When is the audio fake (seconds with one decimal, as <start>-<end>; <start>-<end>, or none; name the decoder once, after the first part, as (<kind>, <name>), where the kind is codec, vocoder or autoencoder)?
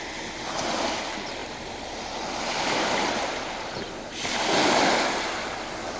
none